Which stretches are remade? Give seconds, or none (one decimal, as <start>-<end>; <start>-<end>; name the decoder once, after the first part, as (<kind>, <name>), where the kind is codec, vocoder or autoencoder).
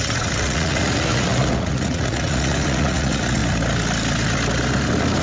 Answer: 0.0-3.4 (vocoder, Vocos)